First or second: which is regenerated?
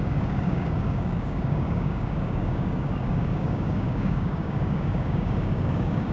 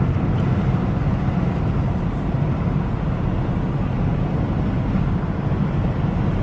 first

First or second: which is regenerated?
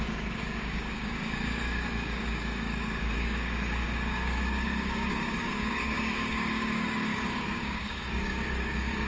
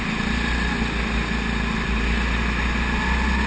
first